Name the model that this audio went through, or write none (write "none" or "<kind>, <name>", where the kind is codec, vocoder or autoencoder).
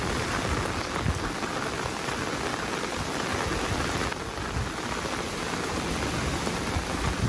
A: none